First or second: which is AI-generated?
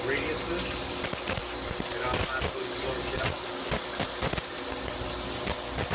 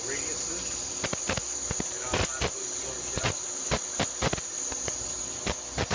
second